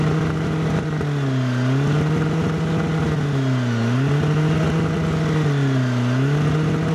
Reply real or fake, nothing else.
real